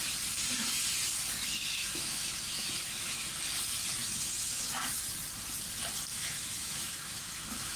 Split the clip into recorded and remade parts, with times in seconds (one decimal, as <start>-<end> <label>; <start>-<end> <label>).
0.0-1.8 recorded; 1.8-3.3 remade; 3.3-4.0 recorded; 4.0-4.9 remade; 4.9-6.1 recorded; 6.1-7.8 remade